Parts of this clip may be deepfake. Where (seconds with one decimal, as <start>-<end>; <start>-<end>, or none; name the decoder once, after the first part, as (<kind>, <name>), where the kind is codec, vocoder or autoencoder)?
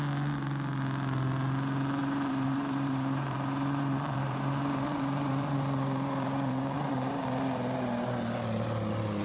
2.0-7.1 (vocoder, BigVGAN v2)